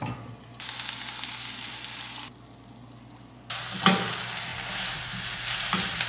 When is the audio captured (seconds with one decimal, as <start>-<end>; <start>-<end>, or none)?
0.0-6.1